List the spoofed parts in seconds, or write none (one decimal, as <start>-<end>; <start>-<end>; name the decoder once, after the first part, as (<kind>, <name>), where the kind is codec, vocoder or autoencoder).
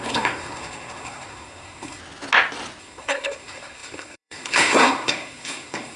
0.0-2.0 (codec, SNAC); 2.8-6.0